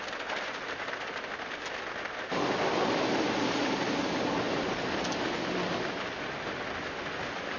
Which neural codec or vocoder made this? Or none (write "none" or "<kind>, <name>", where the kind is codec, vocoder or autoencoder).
none